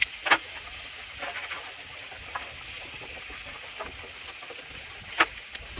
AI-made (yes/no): no